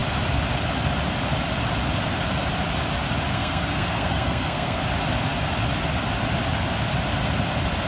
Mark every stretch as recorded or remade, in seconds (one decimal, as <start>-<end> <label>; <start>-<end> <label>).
0.0-3.3 recorded; 3.3-4.8 remade; 4.8-7.9 recorded